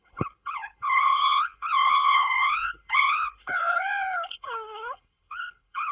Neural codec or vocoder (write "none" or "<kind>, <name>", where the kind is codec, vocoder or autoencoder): codec, HILCodec